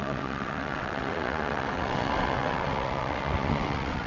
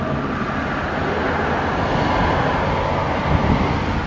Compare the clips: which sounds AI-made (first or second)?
first